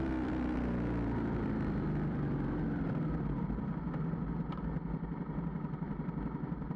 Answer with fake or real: fake